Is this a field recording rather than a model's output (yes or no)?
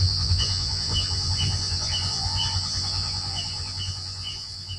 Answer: no